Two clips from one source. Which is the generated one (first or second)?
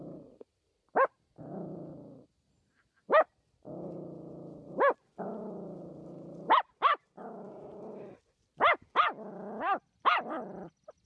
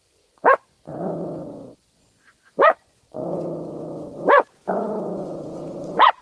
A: second